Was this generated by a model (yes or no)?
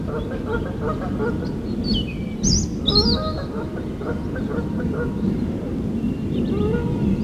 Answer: no